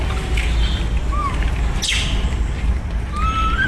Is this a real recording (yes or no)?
yes